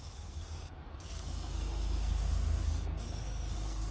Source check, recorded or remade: remade